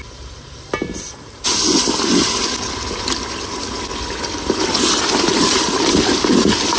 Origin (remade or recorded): recorded